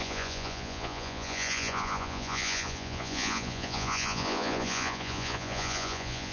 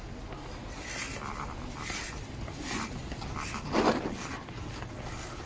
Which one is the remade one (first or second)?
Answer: first